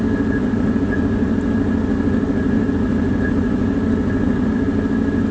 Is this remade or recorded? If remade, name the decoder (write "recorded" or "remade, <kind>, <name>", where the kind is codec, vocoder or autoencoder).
recorded